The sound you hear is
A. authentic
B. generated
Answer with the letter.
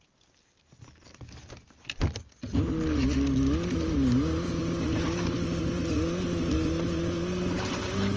A